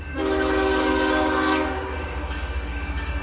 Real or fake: fake